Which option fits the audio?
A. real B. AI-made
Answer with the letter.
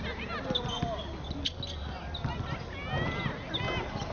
A